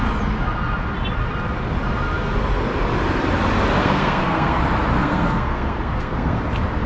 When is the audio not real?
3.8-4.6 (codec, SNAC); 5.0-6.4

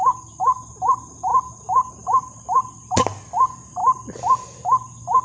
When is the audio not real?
none

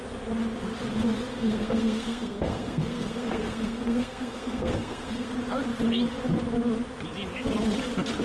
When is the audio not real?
1.3-5.3 (codec, SNAC)